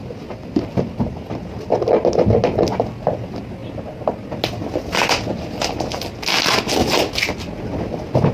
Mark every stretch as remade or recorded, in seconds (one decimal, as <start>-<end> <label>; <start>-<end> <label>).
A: 0.0-8.3 recorded